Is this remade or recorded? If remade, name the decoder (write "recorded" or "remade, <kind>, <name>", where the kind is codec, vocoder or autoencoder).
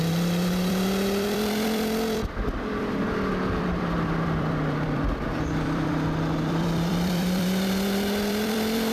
remade, vocoder, BigVGAN v2